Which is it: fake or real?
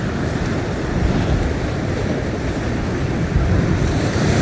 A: fake